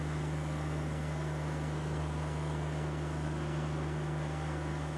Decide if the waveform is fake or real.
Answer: fake